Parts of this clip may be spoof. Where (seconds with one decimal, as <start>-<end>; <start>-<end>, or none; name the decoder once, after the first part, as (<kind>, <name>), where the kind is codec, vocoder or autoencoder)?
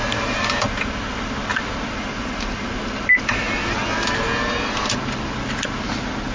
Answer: none